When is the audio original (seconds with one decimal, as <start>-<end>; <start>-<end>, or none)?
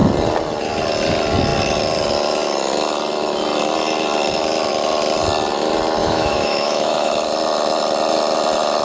0.0-6.0; 7.1-8.8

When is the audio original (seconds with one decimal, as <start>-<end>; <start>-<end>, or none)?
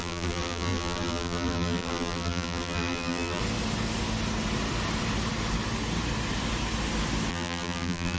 3.4-7.3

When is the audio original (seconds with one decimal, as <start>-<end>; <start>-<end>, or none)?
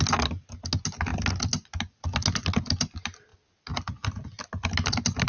0.0-5.3